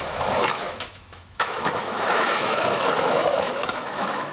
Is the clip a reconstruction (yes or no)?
yes